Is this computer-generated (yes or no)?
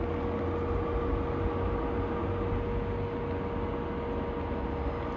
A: no